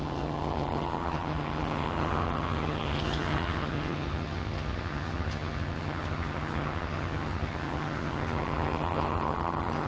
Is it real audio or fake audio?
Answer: fake